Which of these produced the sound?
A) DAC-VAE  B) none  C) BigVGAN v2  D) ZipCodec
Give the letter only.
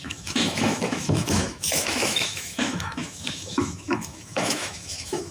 A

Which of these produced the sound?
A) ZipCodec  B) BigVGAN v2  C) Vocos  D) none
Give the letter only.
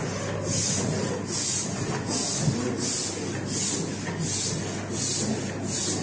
D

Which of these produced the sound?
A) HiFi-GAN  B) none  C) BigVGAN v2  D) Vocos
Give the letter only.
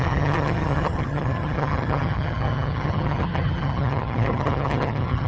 A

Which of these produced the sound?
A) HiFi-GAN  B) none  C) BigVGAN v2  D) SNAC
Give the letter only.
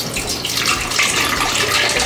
B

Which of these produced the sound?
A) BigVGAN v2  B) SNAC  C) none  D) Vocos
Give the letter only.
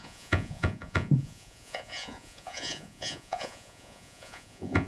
D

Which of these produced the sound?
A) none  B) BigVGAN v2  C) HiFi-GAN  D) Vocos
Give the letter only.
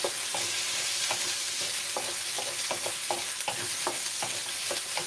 A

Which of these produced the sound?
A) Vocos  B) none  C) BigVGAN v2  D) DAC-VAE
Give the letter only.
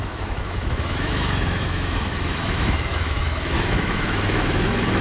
D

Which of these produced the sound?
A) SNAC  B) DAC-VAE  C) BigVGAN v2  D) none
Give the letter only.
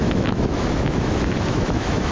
B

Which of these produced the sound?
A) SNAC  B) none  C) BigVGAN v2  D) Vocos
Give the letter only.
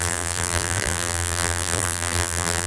C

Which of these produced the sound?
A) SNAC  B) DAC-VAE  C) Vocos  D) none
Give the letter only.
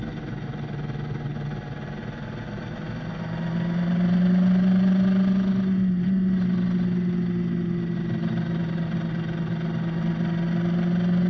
D